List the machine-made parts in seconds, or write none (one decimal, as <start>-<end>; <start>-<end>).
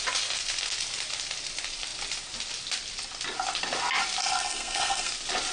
4.2-5.1